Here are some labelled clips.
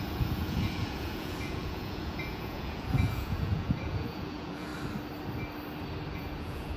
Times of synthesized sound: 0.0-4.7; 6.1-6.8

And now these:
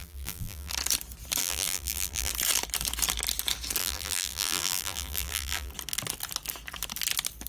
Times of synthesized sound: 0.0-0.7; 1.4-2.3; 3.8-5.7

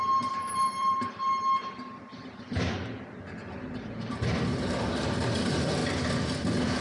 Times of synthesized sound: 0.0-1.2; 4.5-5.8

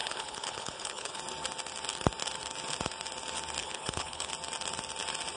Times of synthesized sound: 0.0-1.2; 3.6-4.3

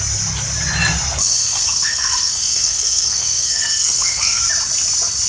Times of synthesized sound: 1.2-4.4

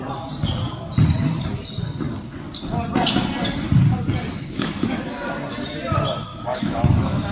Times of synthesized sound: 4.3-5.0; 6.3-7.3